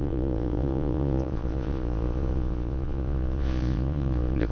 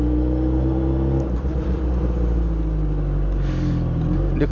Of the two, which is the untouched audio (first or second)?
second